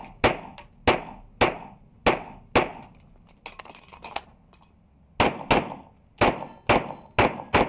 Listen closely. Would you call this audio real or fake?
real